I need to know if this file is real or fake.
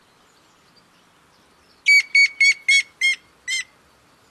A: real